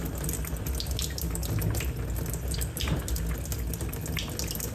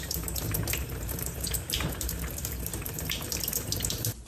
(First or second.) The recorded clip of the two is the first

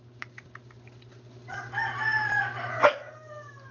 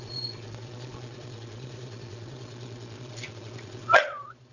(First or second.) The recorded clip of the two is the first